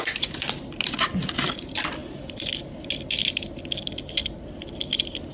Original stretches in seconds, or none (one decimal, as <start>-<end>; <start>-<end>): 0.0-5.3